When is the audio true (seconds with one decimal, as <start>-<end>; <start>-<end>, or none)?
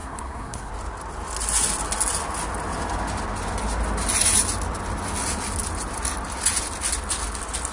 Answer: 0.7-7.7